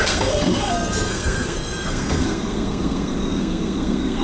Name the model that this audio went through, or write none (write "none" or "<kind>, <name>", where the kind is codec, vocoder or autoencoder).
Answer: codec, SNAC